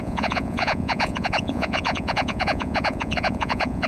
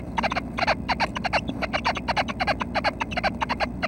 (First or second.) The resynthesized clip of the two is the first